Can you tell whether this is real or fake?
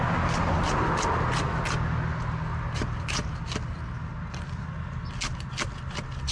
real